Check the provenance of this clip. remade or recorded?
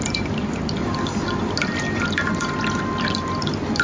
recorded